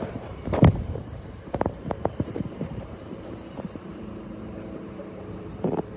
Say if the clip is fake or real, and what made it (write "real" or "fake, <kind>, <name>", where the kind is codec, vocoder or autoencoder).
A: fake, vocoder, BigVGAN v2